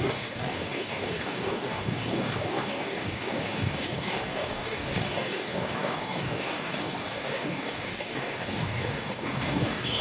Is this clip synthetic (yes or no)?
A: yes